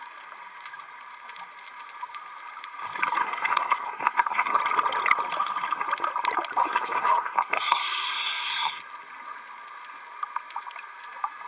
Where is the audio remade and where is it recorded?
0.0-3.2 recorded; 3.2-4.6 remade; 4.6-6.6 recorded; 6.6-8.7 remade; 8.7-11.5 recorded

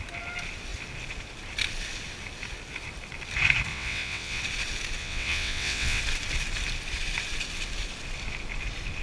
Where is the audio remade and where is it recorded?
0.0-3.7 recorded; 3.7-4.4 remade; 4.4-5.0 recorded; 5.0-6.0 remade; 6.0-9.0 recorded

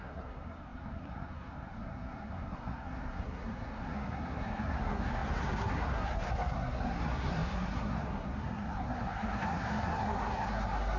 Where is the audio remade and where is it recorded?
0.0-11.0 remade

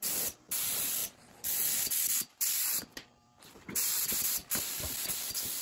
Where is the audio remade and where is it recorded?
0.0-1.0 remade; 1.0-2.3 recorded; 2.3-4.4 remade; 4.4-5.6 recorded

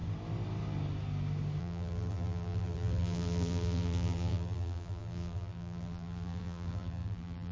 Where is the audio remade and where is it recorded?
0.0-1.6 recorded; 1.6-7.5 remade

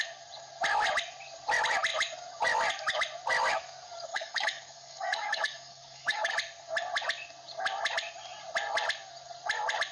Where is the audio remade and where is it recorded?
0.0-4.1 recorded; 4.1-6.3 remade; 6.3-9.9 recorded

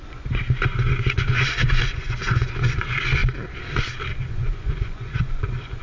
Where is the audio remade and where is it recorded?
0.0-3.2 remade; 3.2-4.3 recorded; 4.3-5.8 remade